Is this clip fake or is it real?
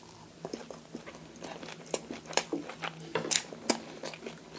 real